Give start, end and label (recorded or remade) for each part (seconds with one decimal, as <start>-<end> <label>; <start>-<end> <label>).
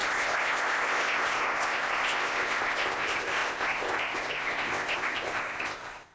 0.0-6.1 remade